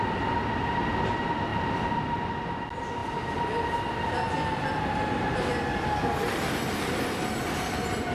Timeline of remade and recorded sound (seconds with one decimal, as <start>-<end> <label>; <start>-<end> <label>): 0.0-8.1 recorded